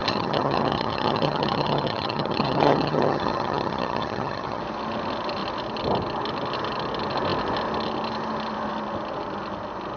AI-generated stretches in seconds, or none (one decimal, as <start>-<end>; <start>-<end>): 0.0-4.6